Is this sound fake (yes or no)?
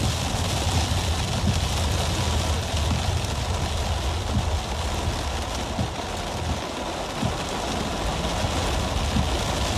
no